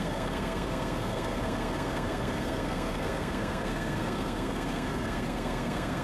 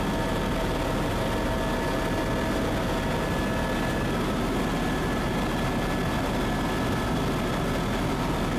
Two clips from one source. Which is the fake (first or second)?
first